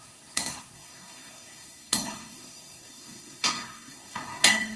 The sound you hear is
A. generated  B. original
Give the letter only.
A